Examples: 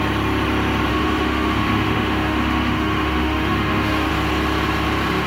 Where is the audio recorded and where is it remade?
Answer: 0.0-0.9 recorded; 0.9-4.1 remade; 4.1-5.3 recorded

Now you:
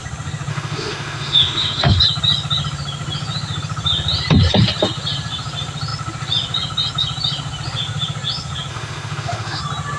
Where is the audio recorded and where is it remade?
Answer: 0.0-0.5 recorded; 0.5-2.0 remade; 2.0-8.7 recorded; 8.7-9.6 remade; 9.6-10.0 recorded